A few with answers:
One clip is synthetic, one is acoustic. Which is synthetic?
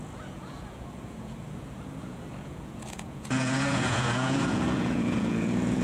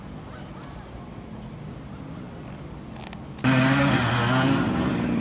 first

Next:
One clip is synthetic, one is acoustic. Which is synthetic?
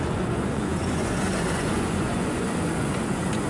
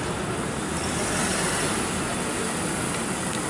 first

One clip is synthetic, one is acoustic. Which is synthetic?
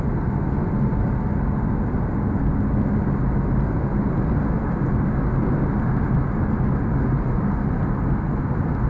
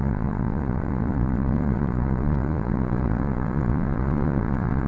second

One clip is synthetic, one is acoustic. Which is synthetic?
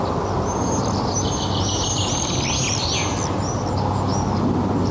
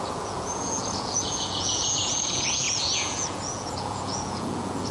second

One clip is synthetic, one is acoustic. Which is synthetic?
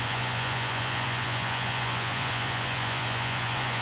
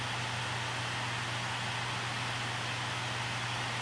first